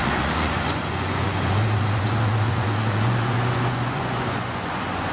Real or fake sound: fake